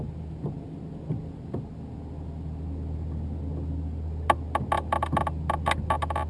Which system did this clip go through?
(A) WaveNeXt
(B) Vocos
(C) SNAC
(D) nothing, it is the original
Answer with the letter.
D